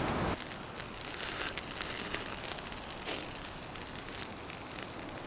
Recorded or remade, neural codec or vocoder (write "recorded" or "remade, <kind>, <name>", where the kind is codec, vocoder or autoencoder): recorded